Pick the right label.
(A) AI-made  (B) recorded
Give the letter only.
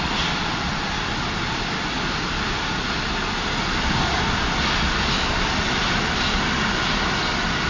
B